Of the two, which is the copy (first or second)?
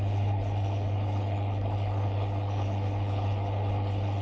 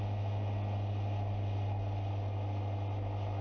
first